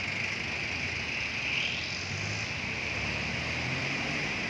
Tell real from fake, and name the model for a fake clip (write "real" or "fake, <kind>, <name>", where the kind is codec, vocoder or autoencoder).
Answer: real